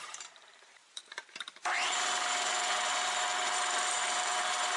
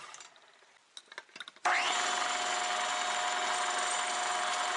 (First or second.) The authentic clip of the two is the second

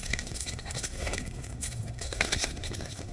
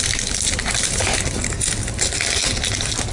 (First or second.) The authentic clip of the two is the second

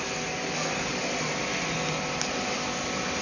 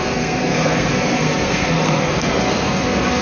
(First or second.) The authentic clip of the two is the first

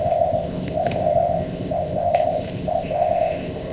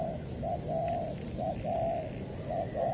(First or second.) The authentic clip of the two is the second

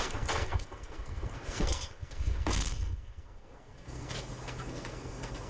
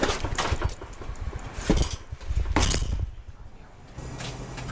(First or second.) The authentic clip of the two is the second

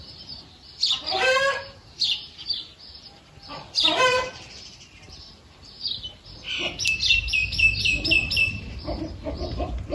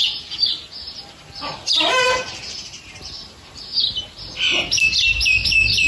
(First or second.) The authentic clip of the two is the second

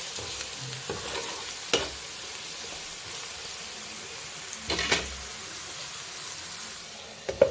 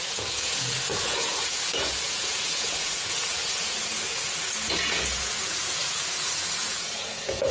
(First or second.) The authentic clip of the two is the first